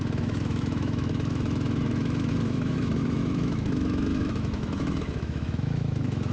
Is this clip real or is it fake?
fake